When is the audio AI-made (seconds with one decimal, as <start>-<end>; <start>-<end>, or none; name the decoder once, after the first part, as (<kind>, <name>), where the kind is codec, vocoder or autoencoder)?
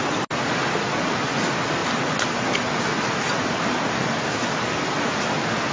none